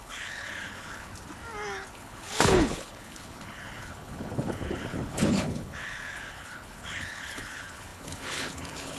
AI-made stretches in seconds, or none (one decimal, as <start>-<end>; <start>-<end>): 0.0-1.1; 1.9-9.0